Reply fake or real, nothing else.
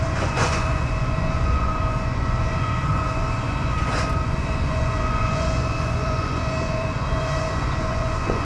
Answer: fake